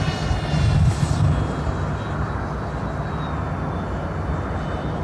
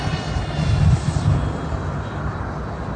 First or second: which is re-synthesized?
second